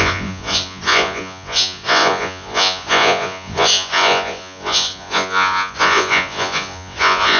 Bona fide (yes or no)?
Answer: no